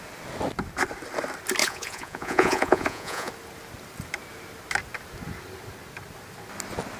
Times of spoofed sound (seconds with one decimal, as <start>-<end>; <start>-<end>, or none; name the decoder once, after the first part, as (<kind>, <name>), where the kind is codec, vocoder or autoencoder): 1.6-3.3 (vocoder, Vocos)